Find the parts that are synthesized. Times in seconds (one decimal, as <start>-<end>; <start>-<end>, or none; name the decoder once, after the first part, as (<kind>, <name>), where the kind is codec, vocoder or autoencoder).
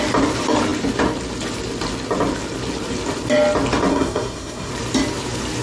3.9-4.7 (codec, SNAC)